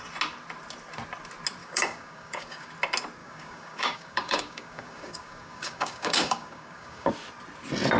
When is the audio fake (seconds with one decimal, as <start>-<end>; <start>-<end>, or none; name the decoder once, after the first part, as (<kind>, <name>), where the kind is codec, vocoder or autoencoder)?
1.6-2.7 (codec, DAC); 3.2-7.1